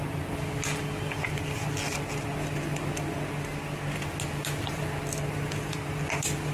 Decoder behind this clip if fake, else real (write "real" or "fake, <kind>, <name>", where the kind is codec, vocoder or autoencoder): real